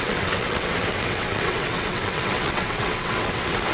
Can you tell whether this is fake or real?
fake